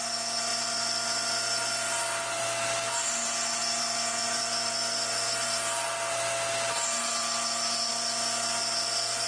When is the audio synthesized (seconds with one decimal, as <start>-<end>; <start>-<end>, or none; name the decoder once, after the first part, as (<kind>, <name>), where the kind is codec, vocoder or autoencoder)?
none